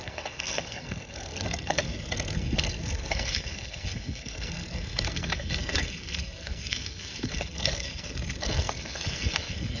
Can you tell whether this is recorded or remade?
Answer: remade